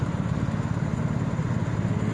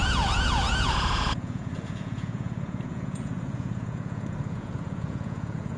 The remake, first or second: second